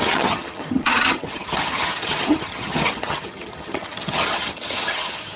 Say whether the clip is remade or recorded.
remade